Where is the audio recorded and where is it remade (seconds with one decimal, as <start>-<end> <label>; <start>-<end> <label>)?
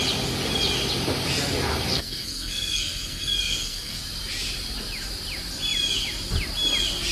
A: 0.0-1.9 recorded; 1.9-4.0 remade; 4.0-7.1 recorded